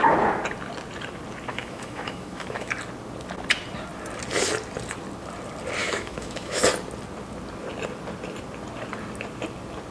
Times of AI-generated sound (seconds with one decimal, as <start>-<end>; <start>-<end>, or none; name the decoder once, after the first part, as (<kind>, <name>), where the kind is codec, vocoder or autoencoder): 1.5-2.7 (autoencoder, DAC-VAE); 5.8-6.6